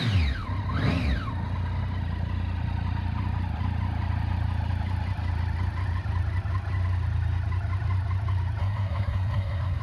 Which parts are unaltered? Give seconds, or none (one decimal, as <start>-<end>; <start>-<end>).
0.0-8.6